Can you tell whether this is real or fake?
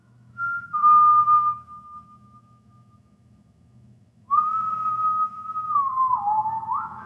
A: fake